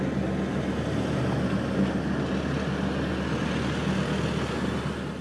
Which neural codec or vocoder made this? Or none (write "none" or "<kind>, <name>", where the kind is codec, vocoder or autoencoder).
none